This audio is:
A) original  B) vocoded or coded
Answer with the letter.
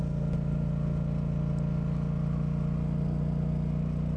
A